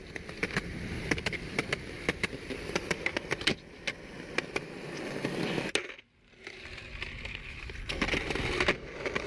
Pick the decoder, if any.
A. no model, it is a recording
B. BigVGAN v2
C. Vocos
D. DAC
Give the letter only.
A